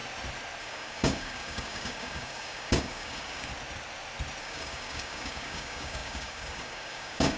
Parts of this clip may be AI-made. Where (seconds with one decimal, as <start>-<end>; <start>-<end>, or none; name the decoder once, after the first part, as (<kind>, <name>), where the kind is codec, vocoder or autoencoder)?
0.6-3.5 (codec, DAC); 4.4-7.4